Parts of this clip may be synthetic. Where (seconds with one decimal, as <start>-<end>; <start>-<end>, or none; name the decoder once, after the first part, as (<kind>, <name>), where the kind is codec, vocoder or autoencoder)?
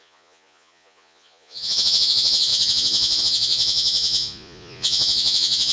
0.0-5.7 (vocoder, Vocos)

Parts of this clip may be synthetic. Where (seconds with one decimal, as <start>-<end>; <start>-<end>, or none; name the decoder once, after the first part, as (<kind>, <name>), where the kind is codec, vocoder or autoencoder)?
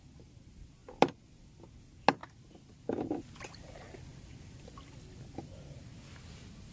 none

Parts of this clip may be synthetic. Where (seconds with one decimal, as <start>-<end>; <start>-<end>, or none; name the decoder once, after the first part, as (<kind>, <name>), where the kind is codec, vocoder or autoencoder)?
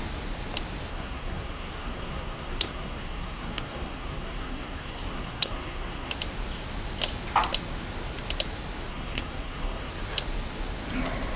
0.9-6.1 (codec, SNAC); 8.9-9.9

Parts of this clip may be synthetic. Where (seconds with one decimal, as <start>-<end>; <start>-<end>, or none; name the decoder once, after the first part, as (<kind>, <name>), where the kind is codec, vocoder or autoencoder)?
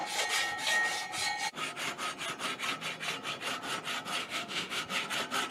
4.2-4.8 (autoencoder, DAC-VAE)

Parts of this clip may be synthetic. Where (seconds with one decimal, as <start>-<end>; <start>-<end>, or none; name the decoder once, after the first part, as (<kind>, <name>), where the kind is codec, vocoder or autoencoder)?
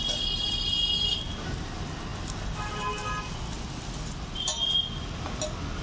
none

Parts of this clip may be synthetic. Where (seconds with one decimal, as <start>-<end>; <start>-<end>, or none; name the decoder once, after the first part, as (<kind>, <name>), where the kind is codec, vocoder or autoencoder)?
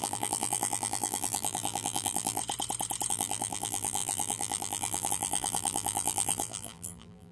0.0-2.4 (vocoder, BigVGAN v2); 3.1-7.3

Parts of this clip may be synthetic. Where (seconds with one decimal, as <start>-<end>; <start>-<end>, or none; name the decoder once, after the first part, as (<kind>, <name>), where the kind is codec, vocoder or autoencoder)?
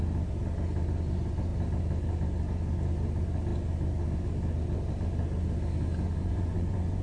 6.2-7.0 (vocoder, Vocos)